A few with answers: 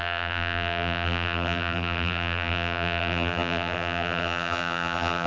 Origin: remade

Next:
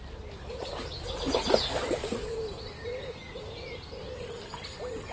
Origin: recorded